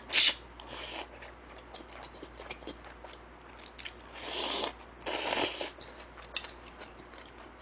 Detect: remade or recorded recorded